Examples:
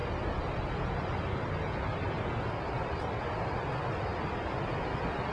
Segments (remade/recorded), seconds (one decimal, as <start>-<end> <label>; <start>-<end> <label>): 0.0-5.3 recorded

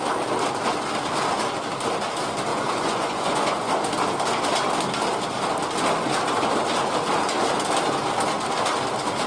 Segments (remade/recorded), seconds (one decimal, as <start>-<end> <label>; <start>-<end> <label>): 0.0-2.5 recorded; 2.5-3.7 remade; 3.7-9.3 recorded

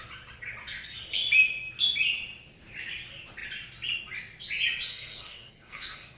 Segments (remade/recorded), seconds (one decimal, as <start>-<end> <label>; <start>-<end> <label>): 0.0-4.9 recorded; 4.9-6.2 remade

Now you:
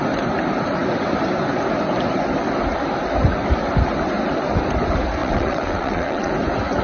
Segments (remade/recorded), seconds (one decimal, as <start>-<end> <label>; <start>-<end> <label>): 0.0-5.2 recorded; 5.2-6.3 remade; 6.3-6.8 recorded

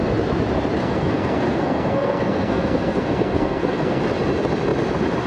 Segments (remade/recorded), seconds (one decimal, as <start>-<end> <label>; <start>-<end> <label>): 0.0-0.8 recorded; 0.8-4.0 remade; 4.0-5.3 recorded